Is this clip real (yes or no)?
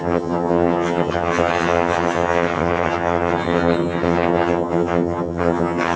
no